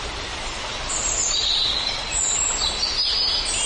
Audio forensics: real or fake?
real